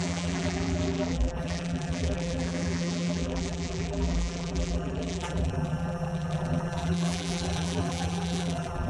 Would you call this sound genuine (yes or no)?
no